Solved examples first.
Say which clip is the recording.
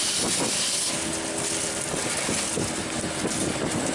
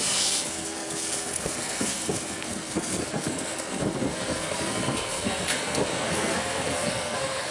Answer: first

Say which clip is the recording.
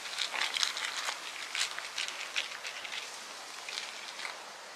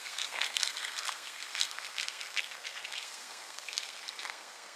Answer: first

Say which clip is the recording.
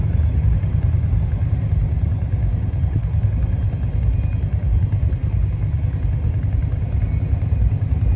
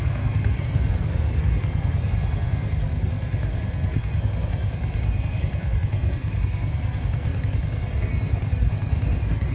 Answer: first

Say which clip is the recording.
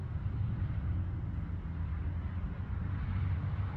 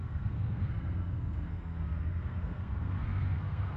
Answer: first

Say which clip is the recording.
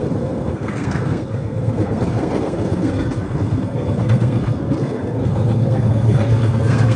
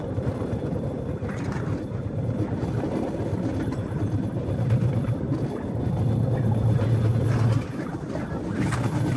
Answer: second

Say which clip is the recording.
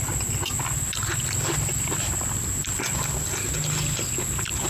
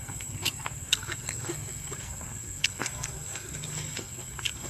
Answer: first